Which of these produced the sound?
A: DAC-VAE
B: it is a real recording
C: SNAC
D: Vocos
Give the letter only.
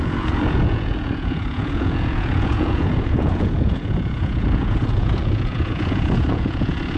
D